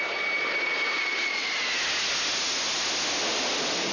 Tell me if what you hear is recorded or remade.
recorded